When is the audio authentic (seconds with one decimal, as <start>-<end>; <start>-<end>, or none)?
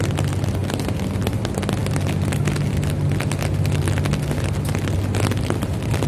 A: 0.0-6.1